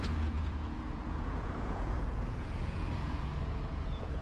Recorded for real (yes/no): no